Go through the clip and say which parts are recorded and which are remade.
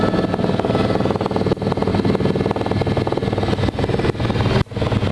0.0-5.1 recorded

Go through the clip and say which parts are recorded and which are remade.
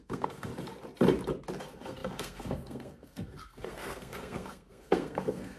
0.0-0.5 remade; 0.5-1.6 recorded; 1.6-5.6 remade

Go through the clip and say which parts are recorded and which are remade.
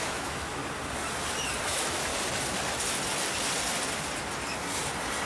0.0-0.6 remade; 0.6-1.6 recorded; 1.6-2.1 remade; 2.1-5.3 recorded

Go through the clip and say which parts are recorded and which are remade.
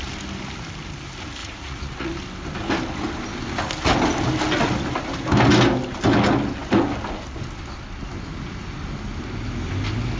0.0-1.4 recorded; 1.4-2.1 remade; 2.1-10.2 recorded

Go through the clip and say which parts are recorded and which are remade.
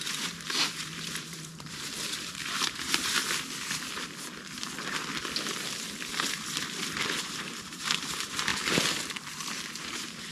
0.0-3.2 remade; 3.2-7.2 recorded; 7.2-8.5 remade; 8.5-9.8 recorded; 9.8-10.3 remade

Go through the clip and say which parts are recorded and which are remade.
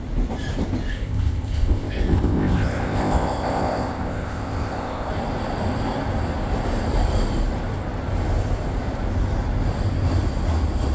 0.0-0.9 recorded; 0.9-5.1 remade; 5.1-10.9 recorded